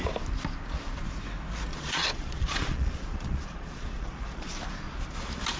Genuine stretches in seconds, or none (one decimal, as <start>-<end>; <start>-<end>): 0.0-1.7; 4.5-5.6